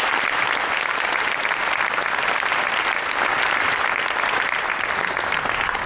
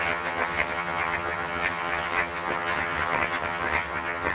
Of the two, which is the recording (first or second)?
first